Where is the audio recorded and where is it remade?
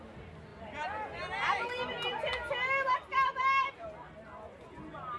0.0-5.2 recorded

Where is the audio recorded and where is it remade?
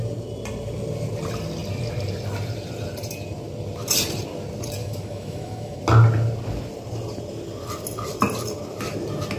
0.0-4.8 recorded; 4.8-5.8 remade; 5.8-9.4 recorded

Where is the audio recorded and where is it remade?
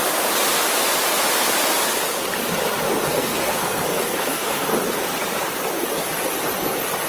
0.0-3.1 recorded; 3.1-4.7 remade; 4.7-7.1 recorded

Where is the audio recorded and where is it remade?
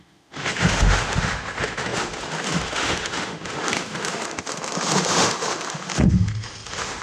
0.0-7.0 remade